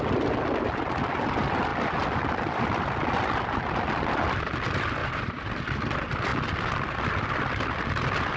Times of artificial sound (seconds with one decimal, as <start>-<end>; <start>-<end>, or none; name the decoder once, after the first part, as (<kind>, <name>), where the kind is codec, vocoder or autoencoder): 5.0-5.5 (vocoder, BigVGAN v2)